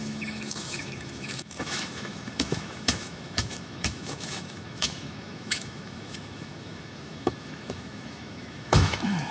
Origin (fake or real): fake